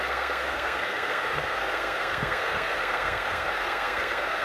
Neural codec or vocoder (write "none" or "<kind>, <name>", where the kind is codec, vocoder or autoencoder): codec, SNAC